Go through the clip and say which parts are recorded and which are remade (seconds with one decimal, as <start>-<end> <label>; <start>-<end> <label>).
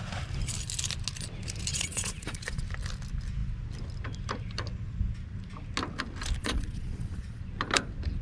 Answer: 0.0-1.7 recorded; 1.7-2.6 remade; 2.6-6.4 recorded; 6.4-7.4 remade; 7.4-8.2 recorded